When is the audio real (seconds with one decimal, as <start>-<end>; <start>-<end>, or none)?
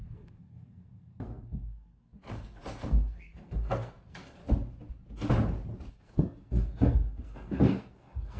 4.4-5.9